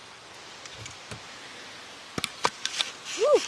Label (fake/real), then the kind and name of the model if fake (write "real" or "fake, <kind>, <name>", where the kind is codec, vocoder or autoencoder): real